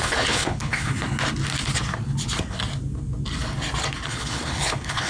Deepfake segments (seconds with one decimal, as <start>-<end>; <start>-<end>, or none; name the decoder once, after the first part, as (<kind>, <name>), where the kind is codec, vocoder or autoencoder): 0.0-1.0 (codec, HILCodec); 4.1-5.1

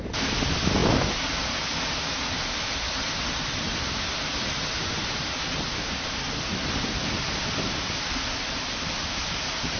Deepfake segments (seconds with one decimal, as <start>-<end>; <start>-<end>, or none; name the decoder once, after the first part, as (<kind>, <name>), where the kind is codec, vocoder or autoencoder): none

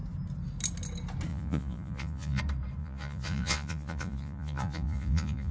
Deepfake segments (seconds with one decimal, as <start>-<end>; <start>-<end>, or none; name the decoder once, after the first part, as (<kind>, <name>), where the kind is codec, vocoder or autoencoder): 1.3-2.4 (vocoder, Vocos); 2.8-5.5